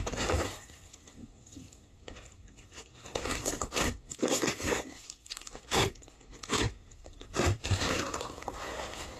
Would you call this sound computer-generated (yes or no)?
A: yes